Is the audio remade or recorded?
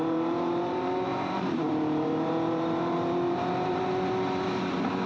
remade